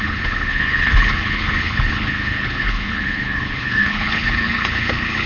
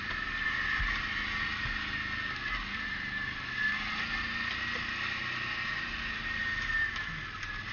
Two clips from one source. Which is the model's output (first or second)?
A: first